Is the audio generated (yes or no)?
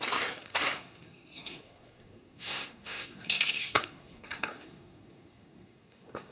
yes